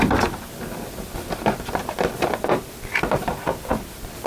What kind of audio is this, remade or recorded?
recorded